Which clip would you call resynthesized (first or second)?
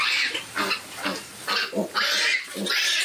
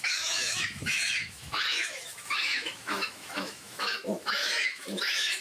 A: second